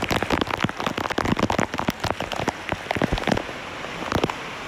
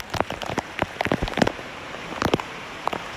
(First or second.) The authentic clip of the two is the first